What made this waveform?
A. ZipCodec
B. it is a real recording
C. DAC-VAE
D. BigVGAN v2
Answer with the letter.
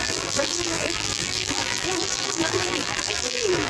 D